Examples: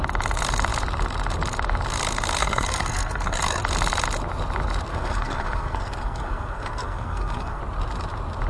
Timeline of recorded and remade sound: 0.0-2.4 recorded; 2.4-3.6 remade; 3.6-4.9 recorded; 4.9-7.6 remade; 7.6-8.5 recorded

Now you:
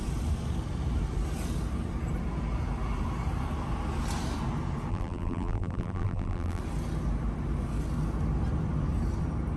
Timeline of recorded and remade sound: 0.0-4.9 recorded; 4.9-6.6 remade; 6.6-9.6 recorded